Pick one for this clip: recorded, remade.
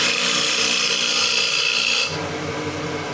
recorded